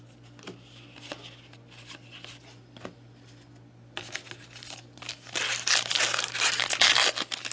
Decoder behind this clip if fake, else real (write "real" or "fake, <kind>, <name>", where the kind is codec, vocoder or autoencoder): real